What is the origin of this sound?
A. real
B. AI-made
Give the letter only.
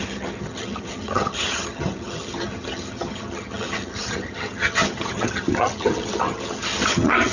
B